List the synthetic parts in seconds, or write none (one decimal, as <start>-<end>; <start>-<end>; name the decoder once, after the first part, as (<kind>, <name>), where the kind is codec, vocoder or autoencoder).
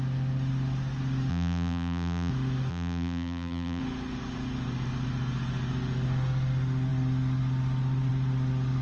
1.3-2.3 (vocoder, BigVGAN v2); 2.7-3.8